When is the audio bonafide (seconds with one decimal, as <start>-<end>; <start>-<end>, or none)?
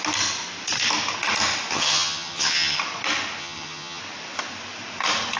0.0-1.7; 2.8-3.4; 4.0-5.4